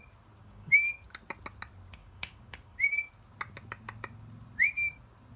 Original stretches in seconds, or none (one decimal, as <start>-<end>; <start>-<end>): 0.0-0.4; 1.1-2.0; 3.1-5.4